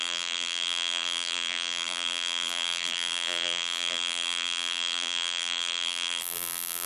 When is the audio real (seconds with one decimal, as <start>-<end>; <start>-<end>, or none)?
none